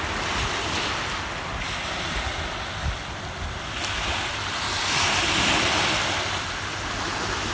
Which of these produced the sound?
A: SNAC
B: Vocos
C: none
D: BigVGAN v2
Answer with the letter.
C